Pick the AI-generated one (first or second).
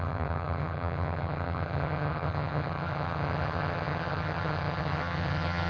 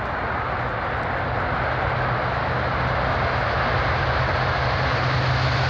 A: first